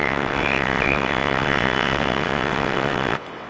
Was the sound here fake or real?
fake